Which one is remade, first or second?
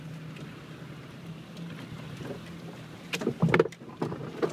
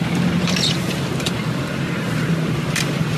second